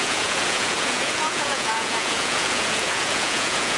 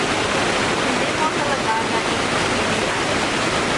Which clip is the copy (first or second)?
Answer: first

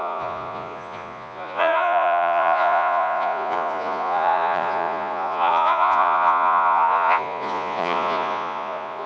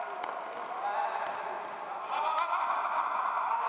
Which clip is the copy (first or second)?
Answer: first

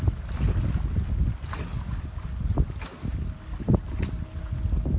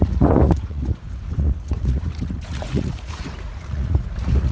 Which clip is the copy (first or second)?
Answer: second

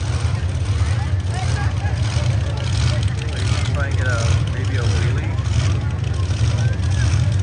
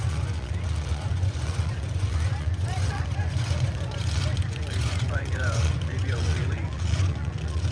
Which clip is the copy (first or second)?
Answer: second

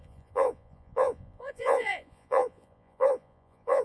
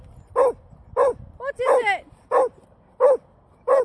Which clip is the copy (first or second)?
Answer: first